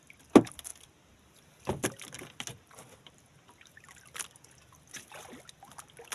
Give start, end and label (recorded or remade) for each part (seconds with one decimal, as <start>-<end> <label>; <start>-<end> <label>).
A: 0.0-6.1 recorded